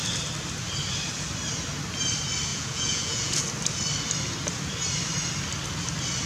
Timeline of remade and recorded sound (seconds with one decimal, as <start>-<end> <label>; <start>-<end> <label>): 0.0-2.5 recorded; 2.5-3.4 remade; 3.4-6.3 recorded